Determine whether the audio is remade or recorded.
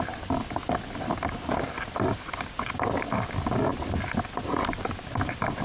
recorded